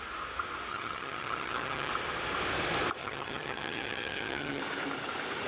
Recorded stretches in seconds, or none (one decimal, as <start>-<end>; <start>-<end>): 0.0-0.7; 1.9-3.0; 4.6-5.5